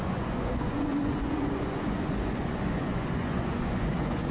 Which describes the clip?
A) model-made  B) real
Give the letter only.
A